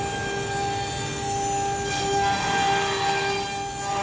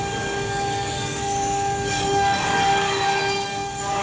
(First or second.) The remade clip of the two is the second